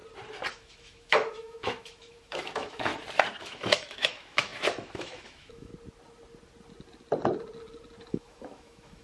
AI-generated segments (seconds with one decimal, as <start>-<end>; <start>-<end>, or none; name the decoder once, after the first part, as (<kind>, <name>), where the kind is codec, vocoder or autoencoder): 0.5-2.9 (autoencoder, DAC-VAE); 3.4-5.7; 8.1-9.0